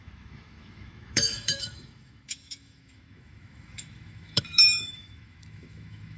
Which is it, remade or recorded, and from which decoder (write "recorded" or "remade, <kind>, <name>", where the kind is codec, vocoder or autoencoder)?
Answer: remade, autoencoder, DAC-VAE